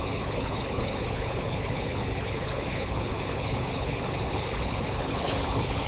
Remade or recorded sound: remade